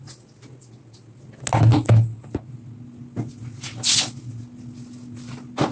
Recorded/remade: recorded